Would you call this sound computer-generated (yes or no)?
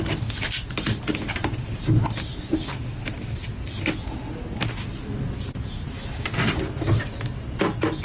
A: no